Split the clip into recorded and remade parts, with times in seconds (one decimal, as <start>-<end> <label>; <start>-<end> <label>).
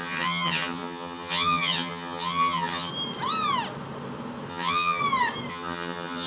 0.0-2.9 remade; 2.9-4.5 recorded; 4.5-5.0 remade; 5.0-5.5 recorded; 5.5-6.3 remade